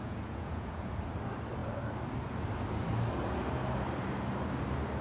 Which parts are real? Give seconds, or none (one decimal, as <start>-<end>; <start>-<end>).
1.0-5.0

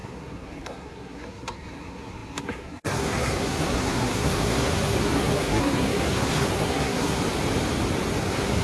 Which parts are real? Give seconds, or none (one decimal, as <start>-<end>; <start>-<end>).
7.2-8.2